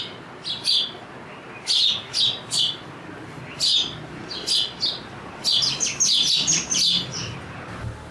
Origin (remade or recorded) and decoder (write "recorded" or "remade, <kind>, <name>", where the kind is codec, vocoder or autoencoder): recorded